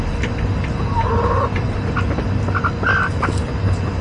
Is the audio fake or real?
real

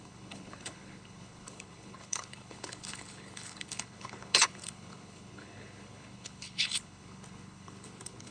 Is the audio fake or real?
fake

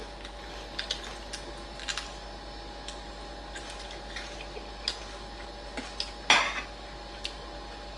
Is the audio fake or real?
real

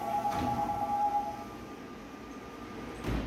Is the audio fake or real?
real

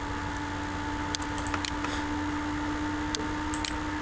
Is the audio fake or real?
real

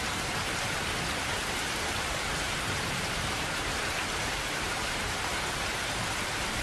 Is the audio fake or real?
fake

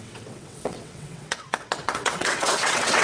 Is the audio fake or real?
fake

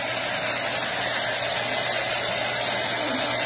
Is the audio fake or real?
real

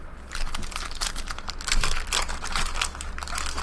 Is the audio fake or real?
real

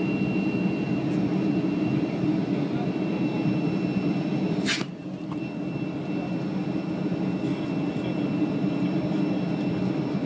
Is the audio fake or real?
real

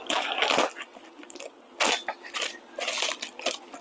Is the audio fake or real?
real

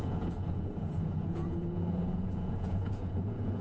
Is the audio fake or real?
fake